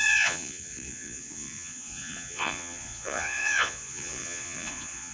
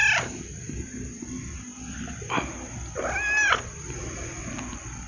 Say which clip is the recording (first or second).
second